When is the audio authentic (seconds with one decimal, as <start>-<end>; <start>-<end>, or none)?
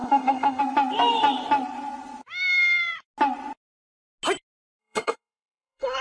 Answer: 0.6-4.8